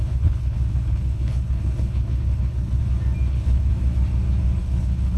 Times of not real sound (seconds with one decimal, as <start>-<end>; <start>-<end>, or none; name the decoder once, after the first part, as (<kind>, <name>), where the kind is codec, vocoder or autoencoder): 0.0-2.8 (codec, HILCodec); 3.3-3.7; 4.6-5.2